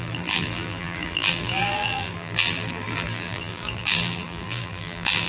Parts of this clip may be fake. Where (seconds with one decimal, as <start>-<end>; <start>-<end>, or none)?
0.0-5.3